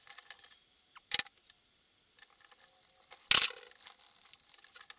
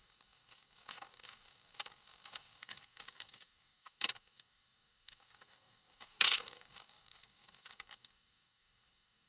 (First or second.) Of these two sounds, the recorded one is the first